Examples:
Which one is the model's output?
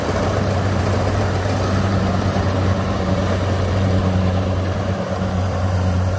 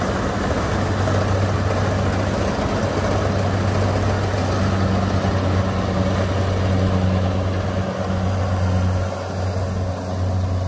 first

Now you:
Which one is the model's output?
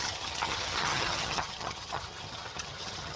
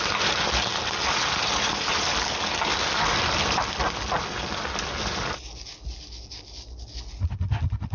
first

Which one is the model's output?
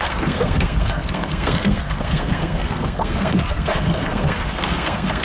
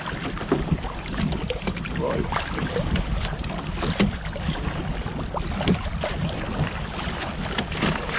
first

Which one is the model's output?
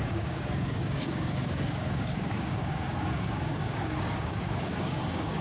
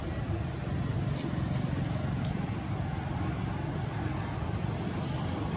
first